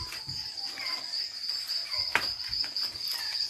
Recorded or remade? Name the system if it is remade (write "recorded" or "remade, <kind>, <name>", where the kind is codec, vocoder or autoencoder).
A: recorded